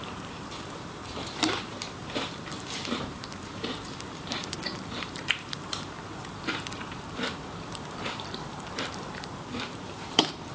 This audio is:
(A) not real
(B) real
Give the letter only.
A